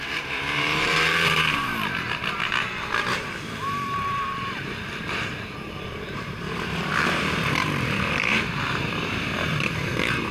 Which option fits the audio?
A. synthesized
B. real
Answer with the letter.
A